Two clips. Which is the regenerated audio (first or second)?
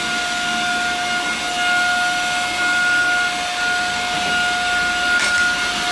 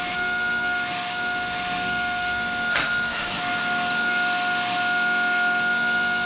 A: second